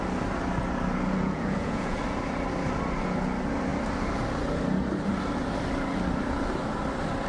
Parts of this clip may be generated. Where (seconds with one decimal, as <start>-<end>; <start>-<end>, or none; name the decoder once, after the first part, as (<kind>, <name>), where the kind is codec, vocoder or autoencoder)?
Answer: 1.2-2.0 (vocoder, Vocos)